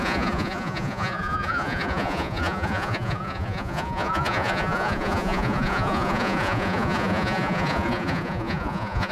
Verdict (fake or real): fake